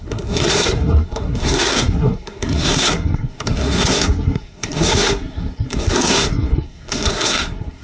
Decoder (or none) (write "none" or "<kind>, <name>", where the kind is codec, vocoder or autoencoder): codec, SNAC